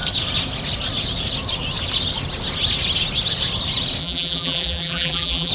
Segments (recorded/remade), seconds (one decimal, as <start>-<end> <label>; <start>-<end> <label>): 0.0-4.0 recorded; 4.0-5.5 remade